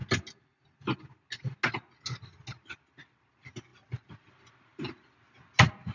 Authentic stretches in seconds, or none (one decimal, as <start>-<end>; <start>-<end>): 0.0-5.9

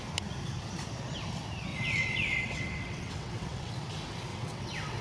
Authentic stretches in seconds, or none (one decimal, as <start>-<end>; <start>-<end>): 0.0-1.7; 3.7-4.3